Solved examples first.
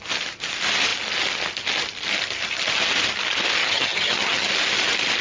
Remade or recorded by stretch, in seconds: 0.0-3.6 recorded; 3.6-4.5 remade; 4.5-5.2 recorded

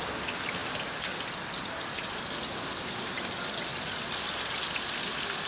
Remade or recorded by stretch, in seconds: 0.0-5.5 recorded

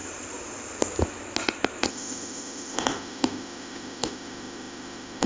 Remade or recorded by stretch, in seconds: 0.0-1.9 recorded; 1.9-5.3 remade

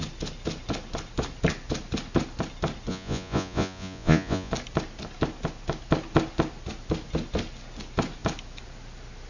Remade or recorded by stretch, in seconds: 0.0-2.9 recorded; 2.9-4.5 remade; 4.5-9.3 recorded

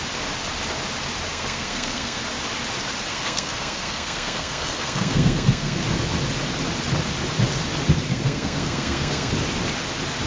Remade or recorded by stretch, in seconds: 0.0-1.3 recorded; 1.3-2.2 remade; 2.2-3.1 recorded; 3.1-5.8 remade; 5.8-8.1 recorded; 8.1-9.3 remade; 9.3-10.3 recorded

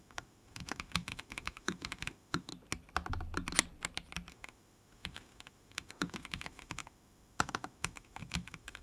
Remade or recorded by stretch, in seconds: 0.0-2.5 remade; 2.5-4.3 recorded; 4.3-8.8 remade